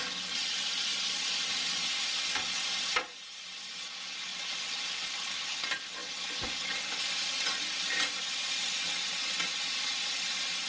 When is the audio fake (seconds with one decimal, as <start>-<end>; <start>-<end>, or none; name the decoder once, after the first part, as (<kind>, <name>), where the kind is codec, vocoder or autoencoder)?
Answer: none